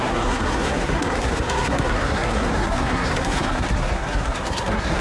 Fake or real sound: fake